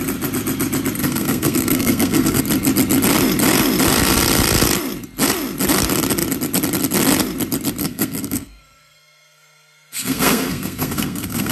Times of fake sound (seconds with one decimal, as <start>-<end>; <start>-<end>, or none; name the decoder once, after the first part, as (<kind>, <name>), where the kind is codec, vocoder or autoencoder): 1.0-2.4 (codec, SNAC); 7.8-11.5